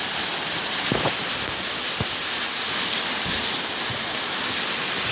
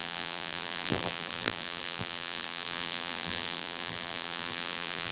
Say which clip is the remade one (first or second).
second